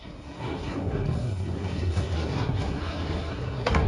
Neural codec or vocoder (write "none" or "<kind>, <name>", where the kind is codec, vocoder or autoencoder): codec, SNAC